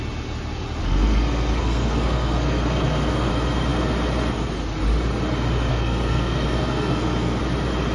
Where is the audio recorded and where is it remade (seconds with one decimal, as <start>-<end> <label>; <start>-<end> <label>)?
0.0-0.8 recorded; 0.8-3.3 remade; 3.3-5.7 recorded; 5.7-7.4 remade; 7.4-7.9 recorded